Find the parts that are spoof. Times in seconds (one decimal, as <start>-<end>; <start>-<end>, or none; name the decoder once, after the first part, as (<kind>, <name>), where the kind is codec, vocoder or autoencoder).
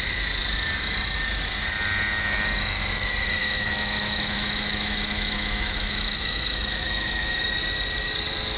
3.4-7.5 (autoencoder, DAC-VAE)